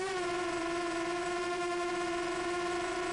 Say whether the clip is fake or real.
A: fake